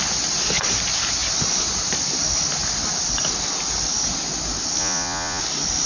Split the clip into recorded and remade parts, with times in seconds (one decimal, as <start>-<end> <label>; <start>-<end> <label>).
0.0-4.8 recorded; 4.8-5.4 remade; 5.4-5.9 recorded